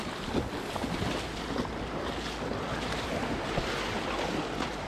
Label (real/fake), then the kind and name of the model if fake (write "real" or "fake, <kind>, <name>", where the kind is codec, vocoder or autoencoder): real